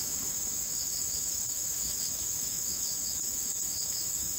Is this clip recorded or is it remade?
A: remade